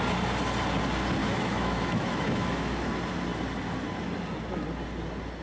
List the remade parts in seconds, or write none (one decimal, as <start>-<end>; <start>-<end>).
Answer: 1.2-2.9